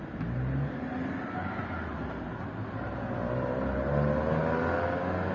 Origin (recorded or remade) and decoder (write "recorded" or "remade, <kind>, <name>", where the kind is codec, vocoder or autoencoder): recorded